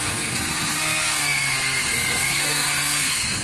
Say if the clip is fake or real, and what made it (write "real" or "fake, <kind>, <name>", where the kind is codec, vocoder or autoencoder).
fake, codec, SNAC